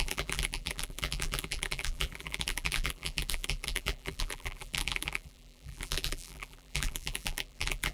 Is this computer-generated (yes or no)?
yes